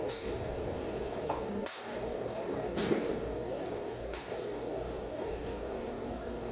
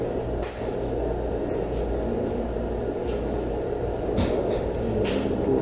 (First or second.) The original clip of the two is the second